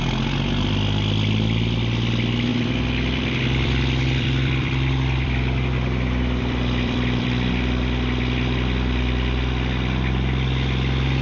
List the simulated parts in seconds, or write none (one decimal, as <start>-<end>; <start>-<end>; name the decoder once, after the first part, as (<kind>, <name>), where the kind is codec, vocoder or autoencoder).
2.5-7.5 (vocoder, BigVGAN v2)